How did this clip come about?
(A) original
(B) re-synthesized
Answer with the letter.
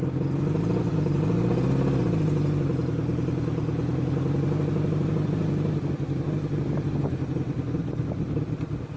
A